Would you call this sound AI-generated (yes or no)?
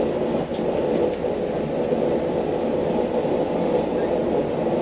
no